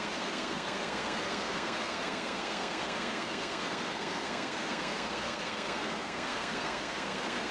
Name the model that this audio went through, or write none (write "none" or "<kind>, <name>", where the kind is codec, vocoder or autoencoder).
codec, SNAC